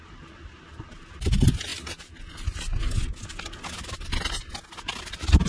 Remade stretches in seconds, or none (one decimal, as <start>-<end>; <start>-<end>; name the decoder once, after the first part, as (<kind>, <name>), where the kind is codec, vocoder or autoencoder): none